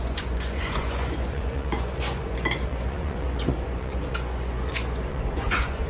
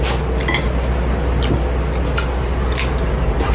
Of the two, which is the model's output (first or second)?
first